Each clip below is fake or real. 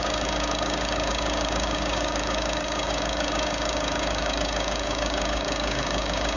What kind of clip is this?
fake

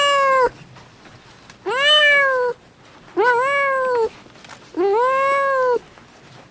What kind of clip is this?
real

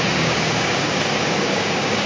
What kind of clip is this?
fake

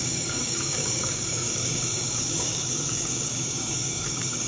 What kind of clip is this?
fake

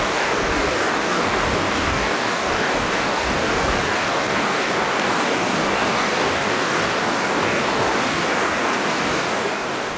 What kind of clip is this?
fake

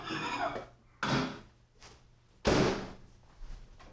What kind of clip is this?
real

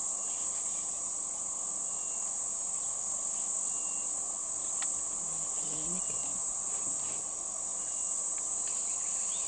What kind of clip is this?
real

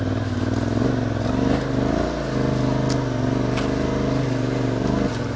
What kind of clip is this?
real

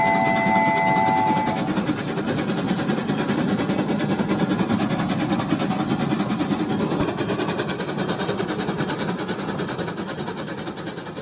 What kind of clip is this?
real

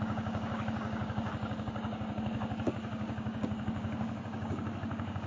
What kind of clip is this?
fake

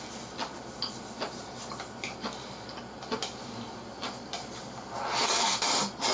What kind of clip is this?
real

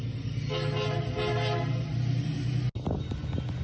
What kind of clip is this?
real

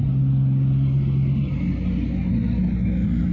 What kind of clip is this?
real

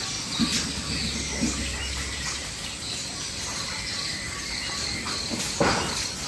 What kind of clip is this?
real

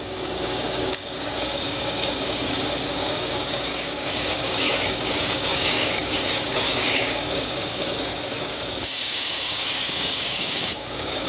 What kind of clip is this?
fake